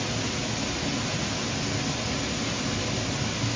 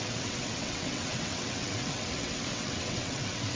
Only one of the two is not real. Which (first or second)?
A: second